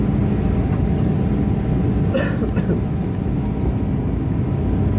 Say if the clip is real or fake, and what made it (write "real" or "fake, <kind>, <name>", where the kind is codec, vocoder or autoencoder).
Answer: real